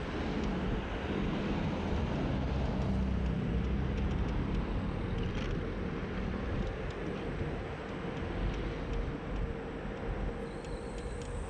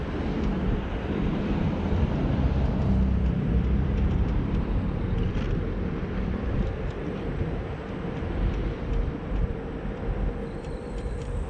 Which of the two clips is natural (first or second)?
first